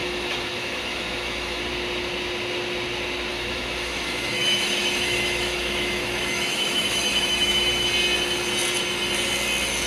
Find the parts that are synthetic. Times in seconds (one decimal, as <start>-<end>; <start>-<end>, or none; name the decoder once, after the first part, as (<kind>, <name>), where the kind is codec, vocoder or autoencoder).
0.0-1.6 (autoencoder, DAC-VAE); 3.3-7.9